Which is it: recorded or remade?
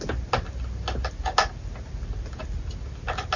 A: recorded